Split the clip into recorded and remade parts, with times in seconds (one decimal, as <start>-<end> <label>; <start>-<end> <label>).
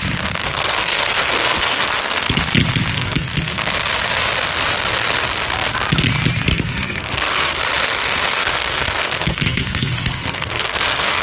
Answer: 0.0-0.4 recorded; 0.4-2.3 remade; 2.3-2.9 recorded; 2.9-3.7 remade; 3.7-6.5 recorded; 6.5-7.6 remade; 7.6-8.4 recorded; 8.4-11.2 remade